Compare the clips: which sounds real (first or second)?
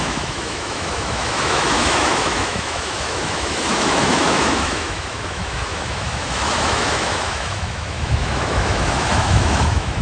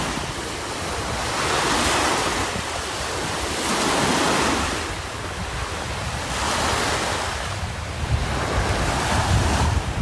second